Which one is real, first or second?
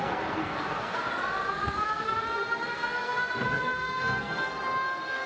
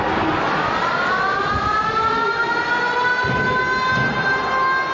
second